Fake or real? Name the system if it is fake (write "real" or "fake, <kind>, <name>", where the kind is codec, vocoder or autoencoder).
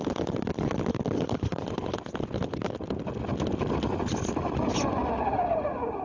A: real